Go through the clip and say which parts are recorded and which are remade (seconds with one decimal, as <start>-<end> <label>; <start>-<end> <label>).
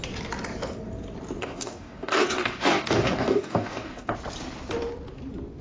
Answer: 0.0-1.4 recorded; 1.4-4.1 remade; 4.1-5.6 recorded